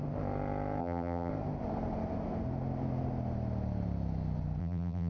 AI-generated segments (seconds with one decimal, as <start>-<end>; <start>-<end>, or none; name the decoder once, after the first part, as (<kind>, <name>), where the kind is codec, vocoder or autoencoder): 0.8-1.3 (vocoder, BigVGAN v2); 4.6-5.1